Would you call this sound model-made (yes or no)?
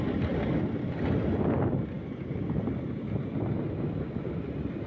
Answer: no